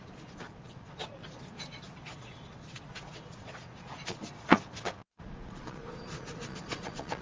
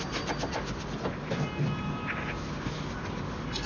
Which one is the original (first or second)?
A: second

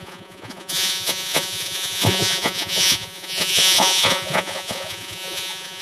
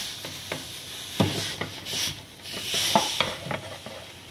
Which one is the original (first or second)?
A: second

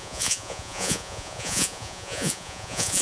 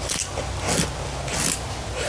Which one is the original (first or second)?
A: second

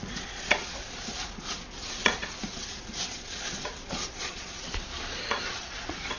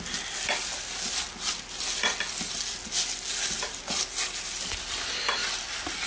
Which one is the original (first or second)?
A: second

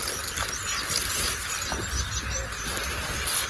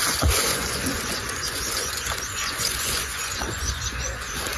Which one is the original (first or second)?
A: first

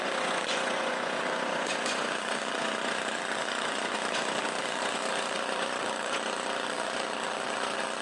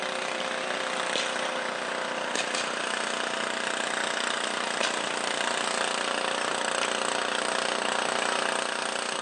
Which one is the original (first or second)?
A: second